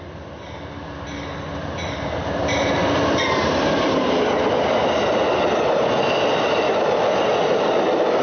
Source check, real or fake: real